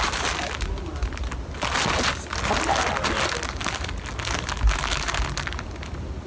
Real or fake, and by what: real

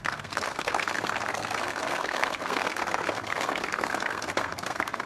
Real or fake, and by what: fake, codec, SNAC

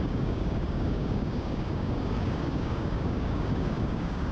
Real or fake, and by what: fake, codec, DAC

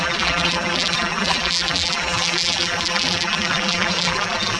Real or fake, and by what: fake, vocoder, BigVGAN v2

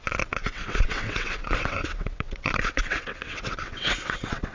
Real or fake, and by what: fake, vocoder, WaveNeXt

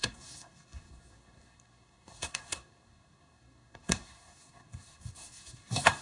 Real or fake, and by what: fake, codec, SNAC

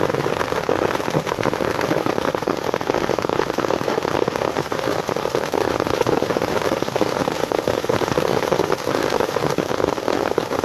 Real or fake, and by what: fake, autoencoder, DAC-VAE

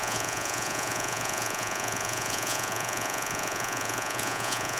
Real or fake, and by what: fake, vocoder, Vocos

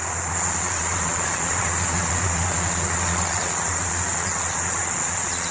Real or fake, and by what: fake, vocoder, Vocos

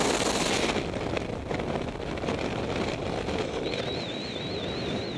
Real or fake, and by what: real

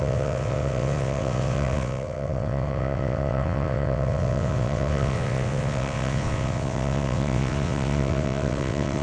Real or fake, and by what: fake, vocoder, WaveNeXt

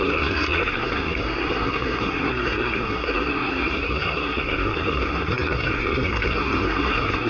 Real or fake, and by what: fake, codec, SNAC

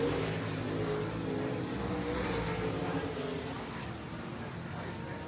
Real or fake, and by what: real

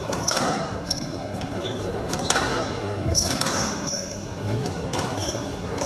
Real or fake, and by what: fake, codec, SNAC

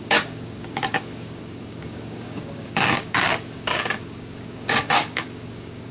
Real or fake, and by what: fake, codec, DAC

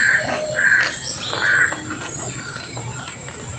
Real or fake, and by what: real